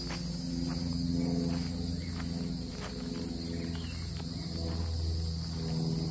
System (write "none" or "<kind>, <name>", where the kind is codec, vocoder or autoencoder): none